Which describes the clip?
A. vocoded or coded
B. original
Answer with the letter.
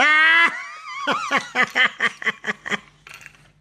B